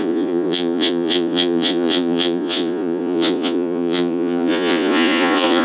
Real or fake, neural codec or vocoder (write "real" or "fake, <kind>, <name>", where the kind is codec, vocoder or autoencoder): fake, vocoder, Vocos